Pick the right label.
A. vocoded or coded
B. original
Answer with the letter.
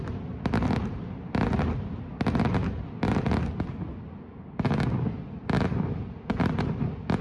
B